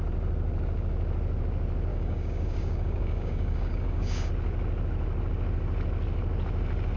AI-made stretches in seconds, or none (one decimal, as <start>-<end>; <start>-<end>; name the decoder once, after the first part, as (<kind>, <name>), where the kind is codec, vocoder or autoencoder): 1.9-4.3 (codec, DAC)